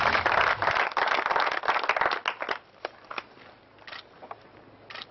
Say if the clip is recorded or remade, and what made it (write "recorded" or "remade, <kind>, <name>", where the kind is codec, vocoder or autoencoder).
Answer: recorded